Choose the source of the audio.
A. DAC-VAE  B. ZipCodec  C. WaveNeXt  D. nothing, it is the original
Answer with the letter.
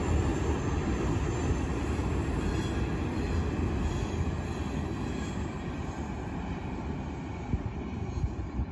D